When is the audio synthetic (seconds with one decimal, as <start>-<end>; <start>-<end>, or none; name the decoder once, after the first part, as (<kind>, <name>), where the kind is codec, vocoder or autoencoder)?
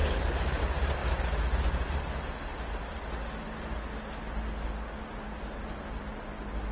0.0-0.6 (vocoder, BigVGAN v2)